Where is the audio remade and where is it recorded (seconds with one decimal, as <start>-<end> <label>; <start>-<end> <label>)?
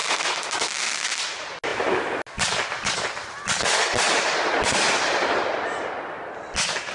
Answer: 0.0-6.9 recorded